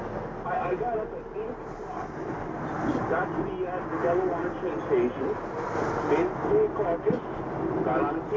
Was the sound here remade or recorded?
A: recorded